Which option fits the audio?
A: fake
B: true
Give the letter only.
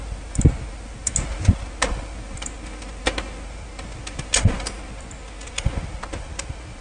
B